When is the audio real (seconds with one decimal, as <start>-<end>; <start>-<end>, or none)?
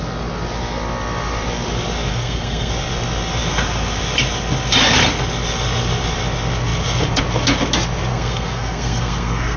0.0-2.1; 2.7-8.1